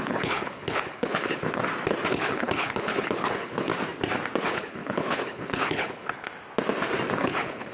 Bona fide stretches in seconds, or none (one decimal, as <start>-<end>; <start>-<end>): 1.6-2.1; 3.7-4.4; 6.3-7.2